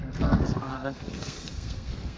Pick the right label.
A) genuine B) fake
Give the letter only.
B